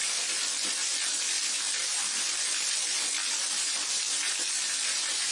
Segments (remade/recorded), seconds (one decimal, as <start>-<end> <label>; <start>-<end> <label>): 0.0-5.3 recorded